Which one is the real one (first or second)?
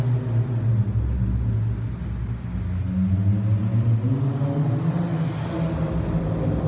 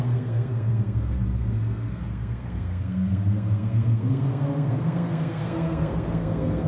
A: first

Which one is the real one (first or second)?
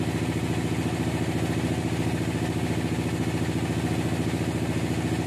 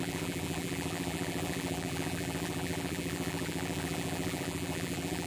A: first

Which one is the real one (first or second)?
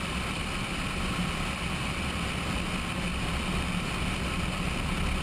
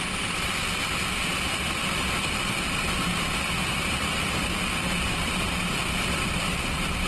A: first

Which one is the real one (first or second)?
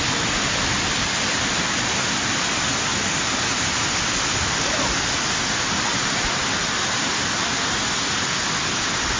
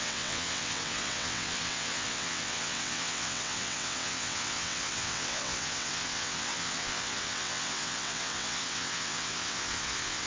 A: first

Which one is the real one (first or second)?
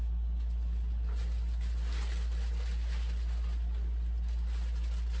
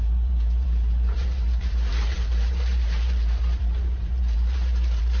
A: first